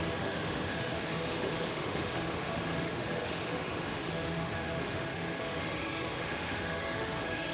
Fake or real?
fake